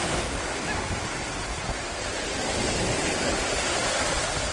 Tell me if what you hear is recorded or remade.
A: recorded